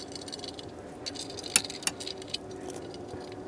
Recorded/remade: recorded